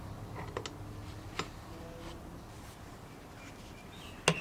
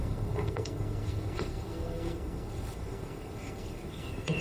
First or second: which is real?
first